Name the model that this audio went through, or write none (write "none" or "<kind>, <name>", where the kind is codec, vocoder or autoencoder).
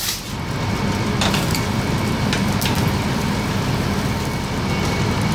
none